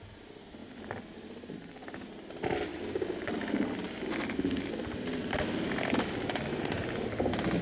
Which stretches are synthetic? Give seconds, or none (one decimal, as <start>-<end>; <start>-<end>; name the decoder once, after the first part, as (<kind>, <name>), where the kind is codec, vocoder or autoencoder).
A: none